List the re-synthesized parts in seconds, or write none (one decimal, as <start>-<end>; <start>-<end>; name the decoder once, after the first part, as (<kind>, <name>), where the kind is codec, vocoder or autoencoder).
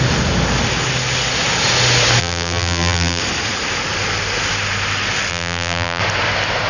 2.2-3.2 (vocoder, BigVGAN v2); 5.3-6.0